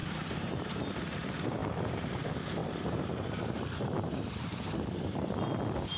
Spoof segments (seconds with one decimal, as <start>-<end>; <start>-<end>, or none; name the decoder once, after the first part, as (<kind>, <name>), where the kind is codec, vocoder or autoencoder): 0.0-0.8 (vocoder, BigVGAN v2); 2.6-5.4